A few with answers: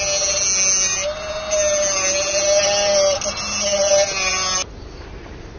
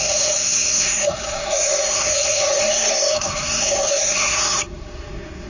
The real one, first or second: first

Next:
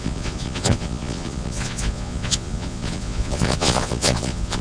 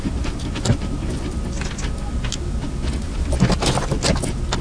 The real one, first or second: second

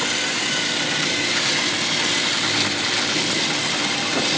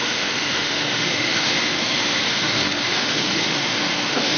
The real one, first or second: first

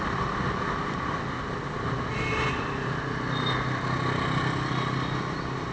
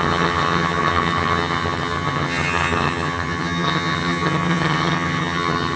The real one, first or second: first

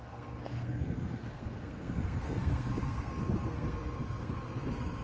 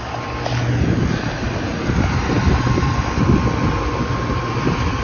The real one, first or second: second